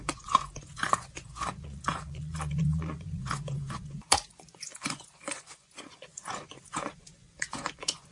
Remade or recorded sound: remade